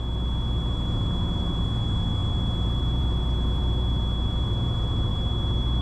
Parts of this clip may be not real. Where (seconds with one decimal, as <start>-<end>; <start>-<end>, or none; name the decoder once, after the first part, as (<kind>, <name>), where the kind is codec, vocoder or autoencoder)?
none

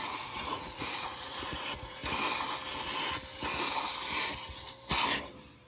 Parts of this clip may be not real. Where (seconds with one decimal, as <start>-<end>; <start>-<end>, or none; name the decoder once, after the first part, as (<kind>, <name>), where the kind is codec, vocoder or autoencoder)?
0.0-2.0 (vocoder, Vocos)

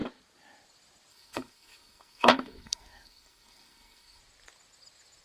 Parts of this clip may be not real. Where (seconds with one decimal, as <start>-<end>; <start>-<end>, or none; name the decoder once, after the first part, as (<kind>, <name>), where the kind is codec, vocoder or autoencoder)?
1.1-4.2 (codec, SNAC)

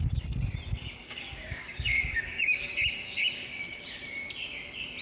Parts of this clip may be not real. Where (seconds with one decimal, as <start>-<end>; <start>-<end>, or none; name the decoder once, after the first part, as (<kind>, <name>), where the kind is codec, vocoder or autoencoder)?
1.0-4.0 (codec, DAC)